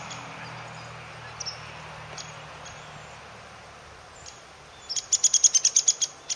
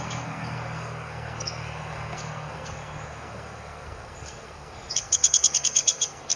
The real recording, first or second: first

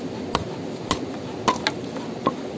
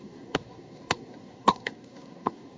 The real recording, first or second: first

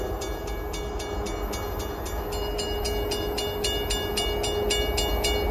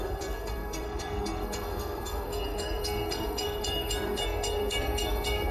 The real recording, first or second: first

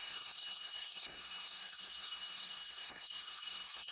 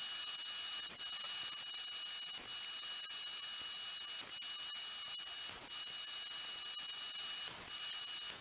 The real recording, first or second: second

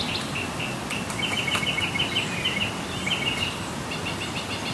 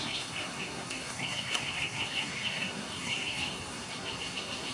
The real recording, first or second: first